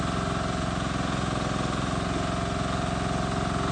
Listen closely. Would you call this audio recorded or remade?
recorded